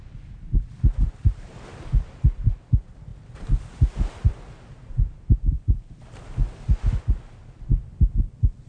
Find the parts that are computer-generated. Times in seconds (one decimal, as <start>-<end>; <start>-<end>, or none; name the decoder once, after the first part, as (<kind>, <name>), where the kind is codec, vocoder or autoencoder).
none